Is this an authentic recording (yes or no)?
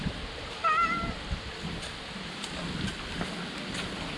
yes